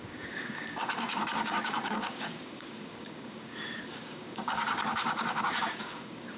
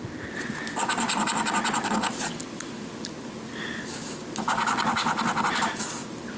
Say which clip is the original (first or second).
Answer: second